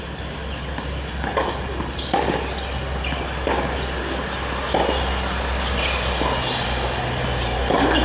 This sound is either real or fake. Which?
real